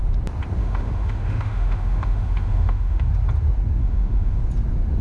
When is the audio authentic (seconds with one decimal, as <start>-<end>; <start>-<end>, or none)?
0.0-0.6; 3.1-3.8; 4.4-5.0